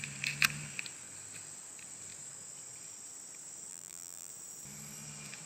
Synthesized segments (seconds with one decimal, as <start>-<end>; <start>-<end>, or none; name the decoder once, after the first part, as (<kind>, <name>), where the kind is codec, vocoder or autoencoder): 3.7-4.3 (vocoder, BigVGAN v2)